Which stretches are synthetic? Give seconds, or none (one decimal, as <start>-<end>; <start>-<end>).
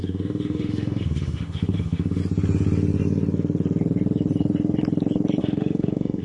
0.0-2.2; 5.4-6.2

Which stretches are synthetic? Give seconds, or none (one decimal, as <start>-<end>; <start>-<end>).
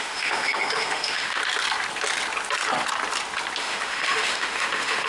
0.0-1.4; 3.6-5.1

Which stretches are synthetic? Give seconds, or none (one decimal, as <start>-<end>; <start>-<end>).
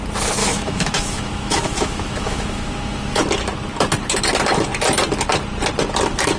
0.4-3.2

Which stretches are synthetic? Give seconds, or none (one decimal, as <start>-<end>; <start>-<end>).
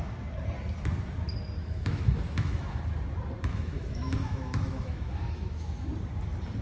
1.6-2.8; 3.5-5.9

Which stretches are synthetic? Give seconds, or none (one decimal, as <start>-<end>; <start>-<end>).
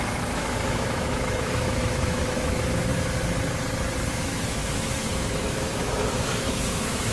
0.0-2.9; 4.1-7.1